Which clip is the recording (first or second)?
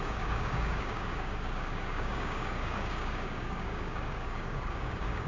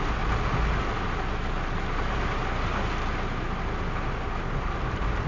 second